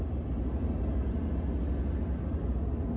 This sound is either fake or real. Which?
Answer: real